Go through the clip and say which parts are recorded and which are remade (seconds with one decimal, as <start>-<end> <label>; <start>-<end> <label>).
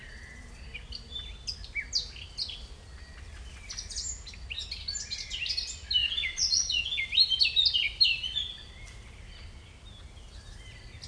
0.0-6.0 recorded; 6.0-6.8 remade; 6.8-11.1 recorded